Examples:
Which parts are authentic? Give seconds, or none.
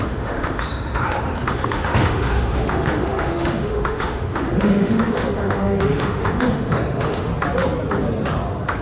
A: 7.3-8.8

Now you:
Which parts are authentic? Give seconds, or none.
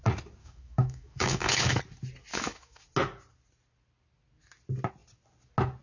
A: 0.0-0.4; 1.8-2.3; 2.8-5.8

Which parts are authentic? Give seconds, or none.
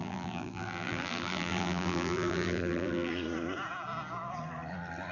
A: 3.1-5.1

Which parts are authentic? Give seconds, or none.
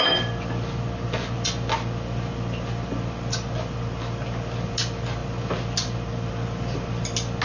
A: 0.0-7.4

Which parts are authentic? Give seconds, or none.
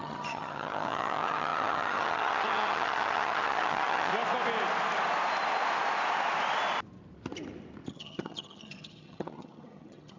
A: 4.1-7.9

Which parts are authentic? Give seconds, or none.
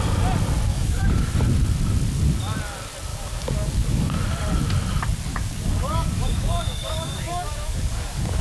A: 0.0-0.7; 1.3-3.1; 4.2-5.3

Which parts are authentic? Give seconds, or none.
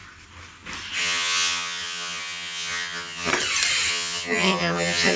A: 0.0-1.0; 3.3-3.9